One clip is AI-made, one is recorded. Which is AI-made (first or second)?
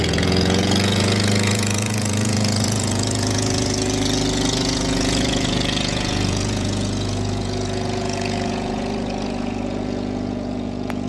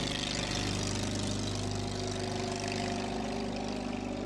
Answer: first